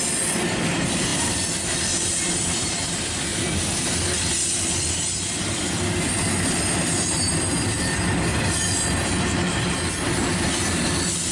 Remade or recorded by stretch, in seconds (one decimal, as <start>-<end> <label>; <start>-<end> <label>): 0.0-1.1 recorded; 1.1-2.3 remade; 2.3-11.3 recorded